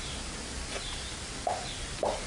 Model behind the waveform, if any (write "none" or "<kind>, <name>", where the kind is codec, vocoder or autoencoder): none